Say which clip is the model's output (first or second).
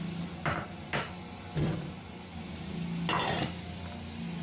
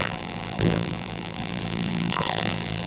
second